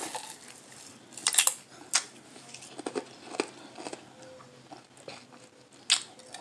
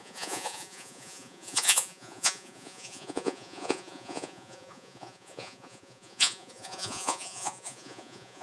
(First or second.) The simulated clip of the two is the second